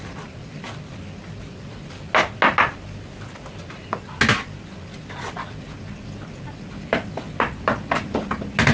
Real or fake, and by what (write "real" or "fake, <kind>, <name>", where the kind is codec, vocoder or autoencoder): real